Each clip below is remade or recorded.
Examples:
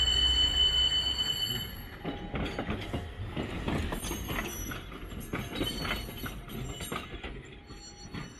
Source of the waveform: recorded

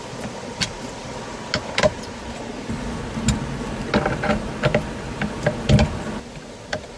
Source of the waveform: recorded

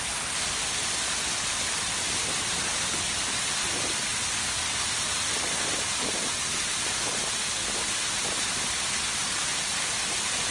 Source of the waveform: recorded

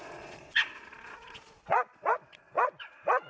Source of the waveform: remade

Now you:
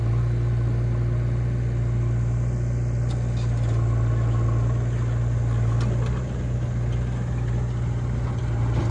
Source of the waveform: recorded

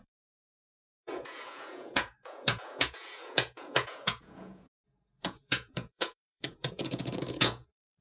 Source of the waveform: remade